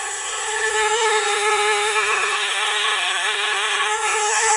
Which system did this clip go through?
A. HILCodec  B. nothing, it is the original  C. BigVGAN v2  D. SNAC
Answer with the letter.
D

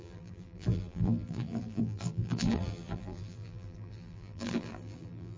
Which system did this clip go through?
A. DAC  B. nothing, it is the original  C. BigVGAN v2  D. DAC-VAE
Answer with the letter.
C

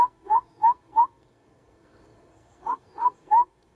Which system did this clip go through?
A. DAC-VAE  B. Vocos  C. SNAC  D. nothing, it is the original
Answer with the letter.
C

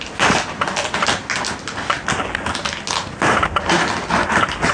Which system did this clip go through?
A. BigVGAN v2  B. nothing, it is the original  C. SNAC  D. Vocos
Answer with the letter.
B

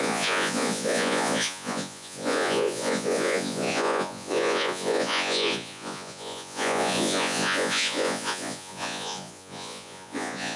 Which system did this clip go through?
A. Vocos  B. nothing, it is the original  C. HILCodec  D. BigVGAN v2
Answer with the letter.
A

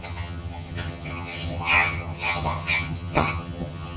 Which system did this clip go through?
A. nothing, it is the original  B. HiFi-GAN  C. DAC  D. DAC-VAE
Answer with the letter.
B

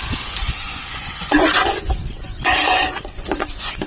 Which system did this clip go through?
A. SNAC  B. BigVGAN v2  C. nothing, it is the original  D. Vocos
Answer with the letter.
D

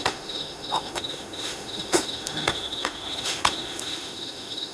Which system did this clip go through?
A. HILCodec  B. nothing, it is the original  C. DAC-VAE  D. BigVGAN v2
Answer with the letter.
C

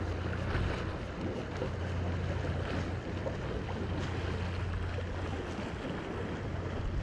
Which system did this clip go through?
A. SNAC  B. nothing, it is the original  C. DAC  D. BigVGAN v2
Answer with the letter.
B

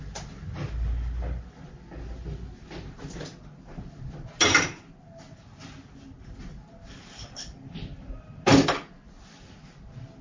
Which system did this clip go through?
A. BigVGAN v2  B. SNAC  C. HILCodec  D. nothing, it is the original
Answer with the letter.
D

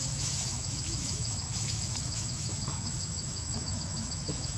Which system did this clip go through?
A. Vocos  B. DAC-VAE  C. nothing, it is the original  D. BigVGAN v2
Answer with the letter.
B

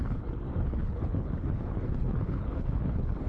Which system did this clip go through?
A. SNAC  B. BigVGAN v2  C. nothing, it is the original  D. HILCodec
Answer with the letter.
D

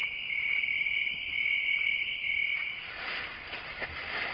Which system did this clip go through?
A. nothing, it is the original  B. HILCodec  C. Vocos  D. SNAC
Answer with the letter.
A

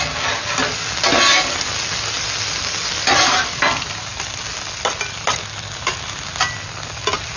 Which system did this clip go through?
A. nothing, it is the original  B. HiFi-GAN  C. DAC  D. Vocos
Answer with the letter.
A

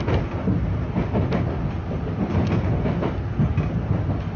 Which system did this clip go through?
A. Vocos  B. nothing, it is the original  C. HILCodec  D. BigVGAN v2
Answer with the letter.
B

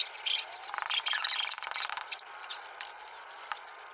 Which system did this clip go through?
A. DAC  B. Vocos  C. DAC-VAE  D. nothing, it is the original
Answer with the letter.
D